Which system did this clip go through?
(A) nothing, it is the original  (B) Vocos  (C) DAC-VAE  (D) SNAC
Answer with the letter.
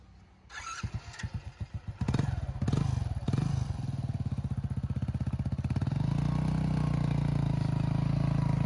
A